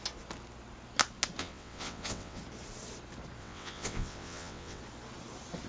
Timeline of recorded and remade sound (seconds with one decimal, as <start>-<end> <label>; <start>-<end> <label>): 0.0-1.4 recorded; 1.4-2.4 remade; 2.4-3.4 recorded; 3.4-4.8 remade; 4.8-5.7 recorded